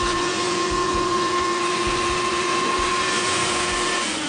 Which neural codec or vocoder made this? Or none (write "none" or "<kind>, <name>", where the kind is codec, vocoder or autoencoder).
vocoder, Vocos